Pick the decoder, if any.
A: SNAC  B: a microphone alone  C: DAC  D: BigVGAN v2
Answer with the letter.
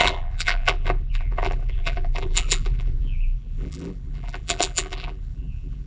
D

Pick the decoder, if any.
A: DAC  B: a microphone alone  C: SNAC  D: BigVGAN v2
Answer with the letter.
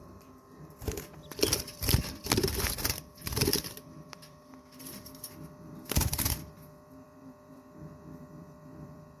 D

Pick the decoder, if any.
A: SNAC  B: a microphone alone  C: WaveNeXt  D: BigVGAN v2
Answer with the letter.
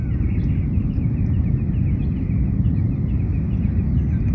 B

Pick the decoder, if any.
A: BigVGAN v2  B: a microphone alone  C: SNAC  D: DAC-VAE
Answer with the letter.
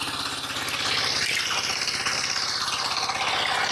B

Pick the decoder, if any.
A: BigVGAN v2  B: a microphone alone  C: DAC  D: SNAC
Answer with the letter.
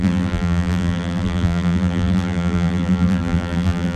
A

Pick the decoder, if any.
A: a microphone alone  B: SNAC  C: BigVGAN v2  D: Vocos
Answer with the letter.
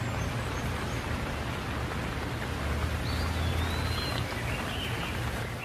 A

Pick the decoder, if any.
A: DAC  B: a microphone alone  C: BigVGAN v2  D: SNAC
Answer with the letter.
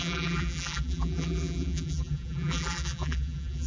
C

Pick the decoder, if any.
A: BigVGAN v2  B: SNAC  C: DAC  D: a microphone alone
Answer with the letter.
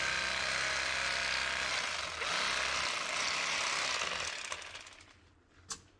D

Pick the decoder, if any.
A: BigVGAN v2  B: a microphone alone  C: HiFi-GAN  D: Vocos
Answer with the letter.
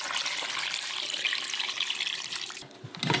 B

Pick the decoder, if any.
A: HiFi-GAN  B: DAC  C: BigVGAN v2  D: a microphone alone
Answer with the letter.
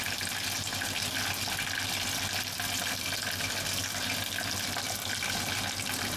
D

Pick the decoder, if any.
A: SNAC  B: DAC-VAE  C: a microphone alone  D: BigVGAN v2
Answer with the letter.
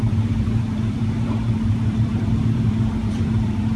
D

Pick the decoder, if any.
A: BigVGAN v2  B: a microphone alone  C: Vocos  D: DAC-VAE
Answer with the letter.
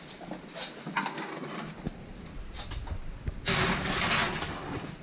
B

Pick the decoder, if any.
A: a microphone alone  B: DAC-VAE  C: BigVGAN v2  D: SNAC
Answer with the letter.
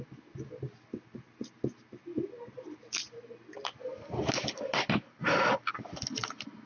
A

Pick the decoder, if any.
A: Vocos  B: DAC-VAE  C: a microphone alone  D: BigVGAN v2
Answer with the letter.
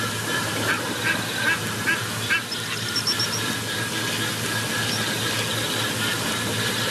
C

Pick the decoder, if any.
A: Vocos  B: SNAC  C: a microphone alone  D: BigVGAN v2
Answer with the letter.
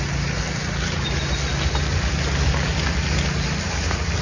C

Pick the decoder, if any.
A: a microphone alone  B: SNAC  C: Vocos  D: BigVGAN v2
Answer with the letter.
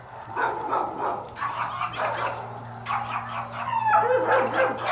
A